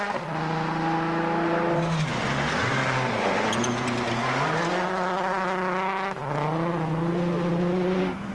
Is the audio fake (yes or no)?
no